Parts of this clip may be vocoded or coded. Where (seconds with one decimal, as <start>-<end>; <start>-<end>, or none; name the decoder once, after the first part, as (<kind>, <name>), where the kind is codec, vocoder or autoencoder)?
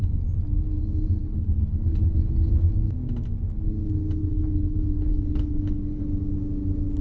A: 1.2-2.5 (codec, HILCodec); 4.2-6.0